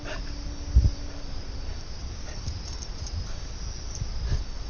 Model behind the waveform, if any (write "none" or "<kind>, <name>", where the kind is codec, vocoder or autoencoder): none